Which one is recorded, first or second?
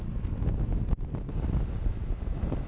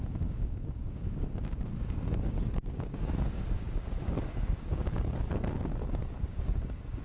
first